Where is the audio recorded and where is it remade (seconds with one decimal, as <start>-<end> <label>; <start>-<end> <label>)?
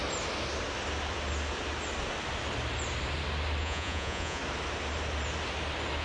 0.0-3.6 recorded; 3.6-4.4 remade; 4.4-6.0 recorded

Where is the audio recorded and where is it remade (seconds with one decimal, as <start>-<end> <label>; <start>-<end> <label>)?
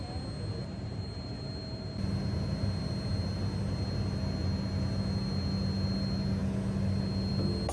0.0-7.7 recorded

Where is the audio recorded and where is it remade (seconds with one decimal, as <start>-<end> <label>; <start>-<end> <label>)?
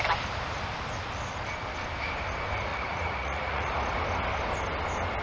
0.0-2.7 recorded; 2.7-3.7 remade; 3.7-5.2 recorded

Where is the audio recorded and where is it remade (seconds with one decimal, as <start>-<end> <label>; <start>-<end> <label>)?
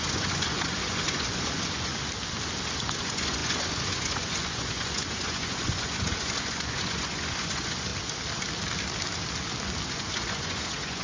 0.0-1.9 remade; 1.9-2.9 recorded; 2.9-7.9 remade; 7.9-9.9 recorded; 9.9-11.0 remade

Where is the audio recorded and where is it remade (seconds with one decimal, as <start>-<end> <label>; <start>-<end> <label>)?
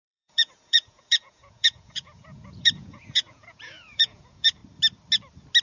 0.0-4.6 remade; 4.6-5.6 recorded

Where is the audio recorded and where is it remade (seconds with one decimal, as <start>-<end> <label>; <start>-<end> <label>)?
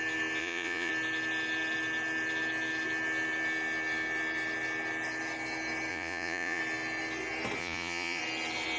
0.0-0.4 recorded; 0.4-0.9 remade; 0.9-5.9 recorded; 5.9-6.6 remade; 6.6-7.6 recorded; 7.6-8.2 remade; 8.2-8.8 recorded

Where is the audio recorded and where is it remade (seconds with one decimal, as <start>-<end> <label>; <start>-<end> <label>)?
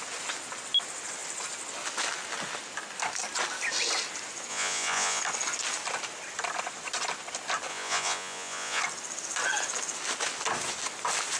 0.0-4.5 recorded; 4.5-5.2 remade; 5.2-7.7 recorded; 7.7-8.8 remade; 8.8-11.4 recorded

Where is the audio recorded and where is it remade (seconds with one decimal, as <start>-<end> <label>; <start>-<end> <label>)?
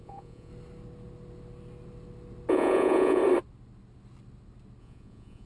0.0-0.5 remade; 0.5-2.5 recorded; 2.5-3.2 remade; 3.2-4.8 recorded; 4.8-5.5 remade